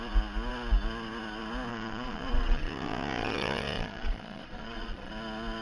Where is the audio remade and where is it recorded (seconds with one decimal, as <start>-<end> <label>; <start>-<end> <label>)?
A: 0.0-1.7 recorded; 1.7-5.1 remade; 5.1-5.6 recorded